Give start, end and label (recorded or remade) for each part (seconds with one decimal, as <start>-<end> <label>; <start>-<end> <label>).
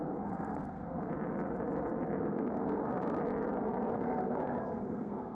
0.0-1.1 remade; 1.1-2.2 recorded; 2.2-3.2 remade; 3.2-3.9 recorded; 3.9-5.3 remade